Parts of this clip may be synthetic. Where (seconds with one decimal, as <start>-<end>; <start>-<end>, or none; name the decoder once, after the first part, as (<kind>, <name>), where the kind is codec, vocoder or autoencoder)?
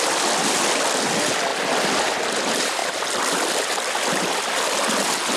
none